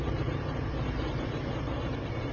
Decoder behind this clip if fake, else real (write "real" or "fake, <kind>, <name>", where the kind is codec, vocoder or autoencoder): fake, vocoder, BigVGAN v2